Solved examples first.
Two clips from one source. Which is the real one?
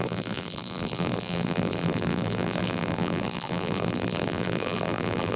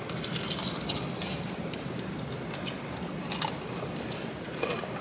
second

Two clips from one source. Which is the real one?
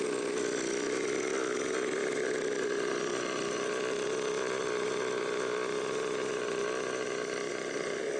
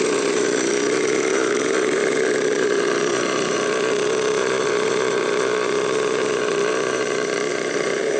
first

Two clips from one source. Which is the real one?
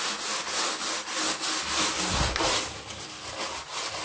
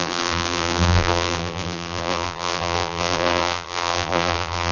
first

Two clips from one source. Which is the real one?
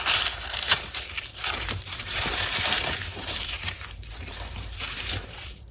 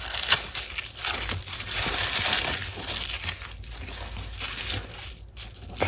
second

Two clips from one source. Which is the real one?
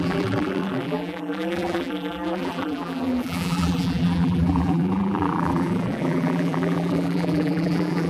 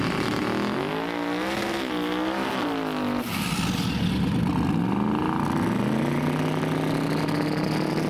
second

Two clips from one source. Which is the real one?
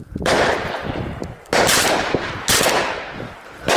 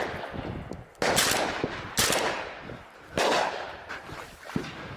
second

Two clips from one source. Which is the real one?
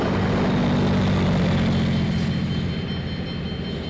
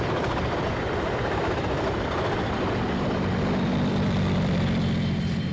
first